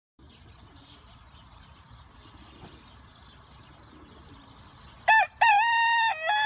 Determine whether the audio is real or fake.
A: real